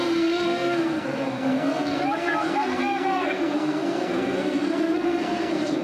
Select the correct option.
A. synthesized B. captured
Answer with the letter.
A